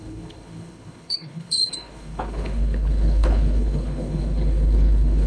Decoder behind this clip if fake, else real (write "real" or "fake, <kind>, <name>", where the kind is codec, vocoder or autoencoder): fake, codec, HILCodec